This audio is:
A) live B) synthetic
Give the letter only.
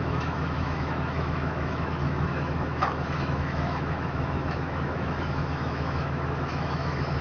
B